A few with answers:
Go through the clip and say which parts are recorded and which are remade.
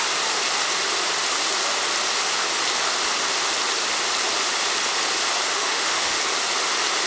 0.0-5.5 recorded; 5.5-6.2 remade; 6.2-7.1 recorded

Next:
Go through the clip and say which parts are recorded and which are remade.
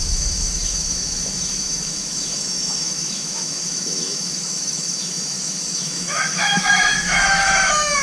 0.0-8.0 remade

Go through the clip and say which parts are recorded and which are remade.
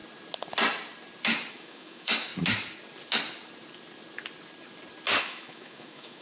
0.0-1.5 recorded; 1.5-2.3 remade; 2.3-5.2 recorded; 5.2-6.2 remade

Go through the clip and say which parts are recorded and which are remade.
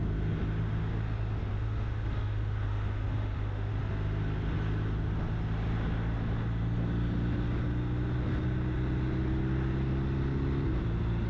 0.0-1.5 recorded; 1.5-3.7 remade; 3.7-11.3 recorded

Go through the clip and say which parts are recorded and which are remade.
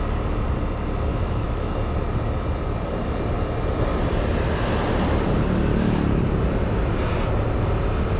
0.0-1.1 recorded; 1.1-1.7 remade; 1.7-8.2 recorded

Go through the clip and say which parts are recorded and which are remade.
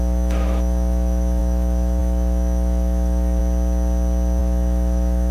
0.0-3.4 remade; 3.4-4.4 recorded; 4.4-5.3 remade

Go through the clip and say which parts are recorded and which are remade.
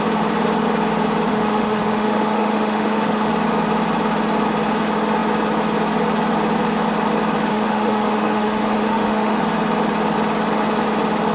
0.0-1.3 recorded; 1.3-3.3 remade; 3.3-7.5 recorded; 7.5-9.4 remade; 9.4-11.3 recorded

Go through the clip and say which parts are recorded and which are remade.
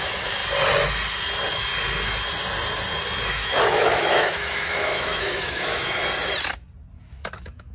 0.0-0.4 remade; 0.4-3.3 recorded; 3.3-6.0 remade; 6.0-7.0 recorded; 7.0-7.7 remade